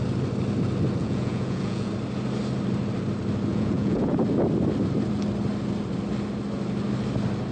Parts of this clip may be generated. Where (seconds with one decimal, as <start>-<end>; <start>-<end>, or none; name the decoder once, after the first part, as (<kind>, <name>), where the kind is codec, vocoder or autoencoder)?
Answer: 1.0-1.9 (vocoder, Vocos); 3.5-4.1